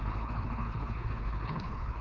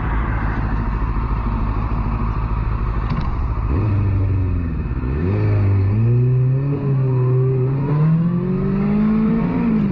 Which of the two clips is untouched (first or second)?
second